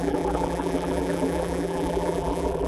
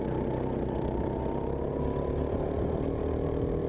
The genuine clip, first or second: second